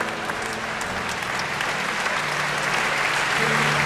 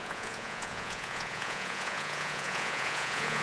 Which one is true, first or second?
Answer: first